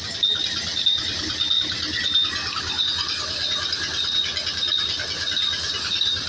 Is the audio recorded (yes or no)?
yes